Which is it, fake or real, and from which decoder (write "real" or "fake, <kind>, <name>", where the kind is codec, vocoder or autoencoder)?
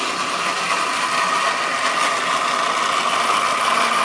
real